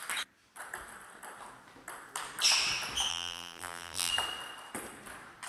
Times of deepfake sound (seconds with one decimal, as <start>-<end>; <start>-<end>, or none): 3.1-4.1